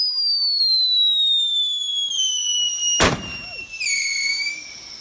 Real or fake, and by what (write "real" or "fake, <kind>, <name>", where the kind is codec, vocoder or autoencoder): real